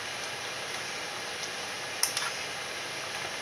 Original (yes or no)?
yes